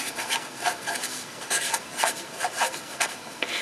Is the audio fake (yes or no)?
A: yes